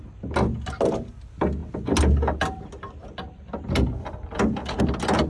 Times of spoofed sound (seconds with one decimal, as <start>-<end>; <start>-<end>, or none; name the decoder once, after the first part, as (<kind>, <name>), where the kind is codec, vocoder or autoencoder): none

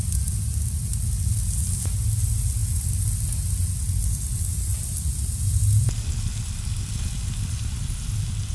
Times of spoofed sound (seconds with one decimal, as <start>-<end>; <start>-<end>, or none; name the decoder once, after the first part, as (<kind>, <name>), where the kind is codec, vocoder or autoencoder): none

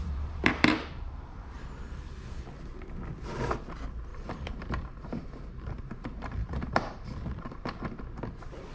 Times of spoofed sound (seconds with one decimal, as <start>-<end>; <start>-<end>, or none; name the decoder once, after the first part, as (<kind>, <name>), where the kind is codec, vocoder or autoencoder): 0.0-2.6 (vocoder, BigVGAN v2); 4.1-8.0

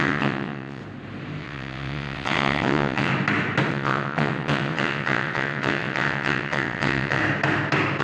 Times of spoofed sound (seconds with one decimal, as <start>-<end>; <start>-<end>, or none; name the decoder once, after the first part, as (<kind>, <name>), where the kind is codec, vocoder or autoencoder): 0.0-0.8 (vocoder, WaveNeXt); 1.4-3.1; 3.7-7.2

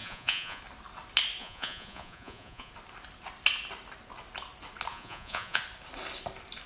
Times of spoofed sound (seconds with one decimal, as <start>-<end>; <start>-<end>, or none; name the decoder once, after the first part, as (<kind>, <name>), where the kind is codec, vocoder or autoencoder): 0.0-0.6 (vocoder, Vocos); 1.4-2.7; 4.9-5.6